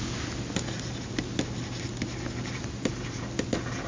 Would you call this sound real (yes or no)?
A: yes